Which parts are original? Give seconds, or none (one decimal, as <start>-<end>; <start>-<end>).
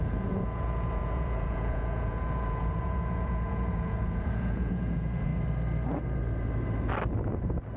5.3-7.8